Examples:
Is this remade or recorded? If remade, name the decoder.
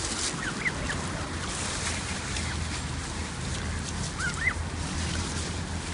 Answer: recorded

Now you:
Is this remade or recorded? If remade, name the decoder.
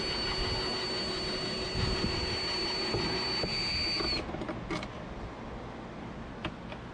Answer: recorded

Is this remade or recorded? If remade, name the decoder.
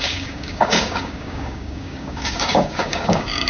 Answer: remade, codec, DAC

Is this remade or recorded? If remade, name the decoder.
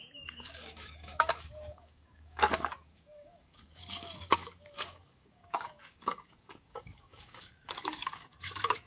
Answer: remade, codec, DAC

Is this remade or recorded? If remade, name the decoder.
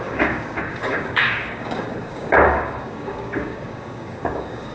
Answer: remade, codec, DAC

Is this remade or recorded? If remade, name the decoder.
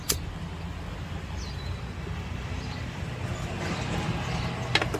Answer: recorded